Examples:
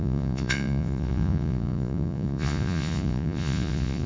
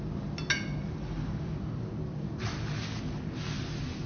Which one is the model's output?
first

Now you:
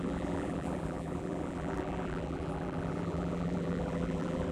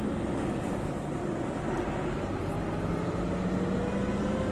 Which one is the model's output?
first